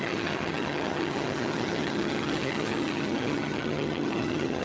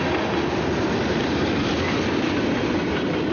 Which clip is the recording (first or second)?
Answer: second